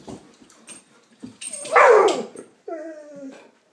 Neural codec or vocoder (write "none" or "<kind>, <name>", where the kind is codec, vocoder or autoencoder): none